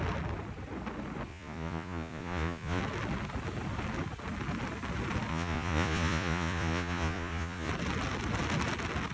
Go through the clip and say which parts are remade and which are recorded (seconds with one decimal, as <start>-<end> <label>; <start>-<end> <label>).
0.0-1.3 recorded; 1.3-2.8 remade; 2.8-5.3 recorded; 5.3-7.7 remade; 7.7-9.1 recorded